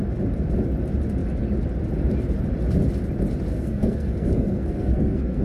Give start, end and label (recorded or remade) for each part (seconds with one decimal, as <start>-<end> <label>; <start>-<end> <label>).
0.0-3.5 recorded; 3.5-5.4 remade